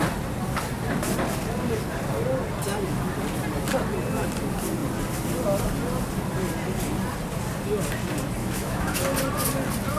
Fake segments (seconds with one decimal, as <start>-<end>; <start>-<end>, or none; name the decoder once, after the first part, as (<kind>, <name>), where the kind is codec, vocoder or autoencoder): 8.4-9.0 (autoencoder, DAC-VAE)